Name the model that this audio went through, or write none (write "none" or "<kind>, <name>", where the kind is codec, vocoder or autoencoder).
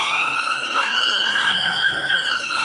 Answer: codec, SNAC